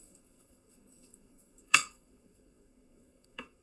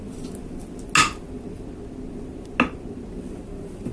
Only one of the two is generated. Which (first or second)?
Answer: first